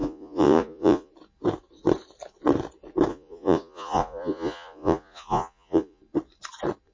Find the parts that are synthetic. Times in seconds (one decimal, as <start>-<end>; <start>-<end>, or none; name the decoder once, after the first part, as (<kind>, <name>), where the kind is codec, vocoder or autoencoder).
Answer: 0.0-1.1 (vocoder, Vocos); 3.1-6.0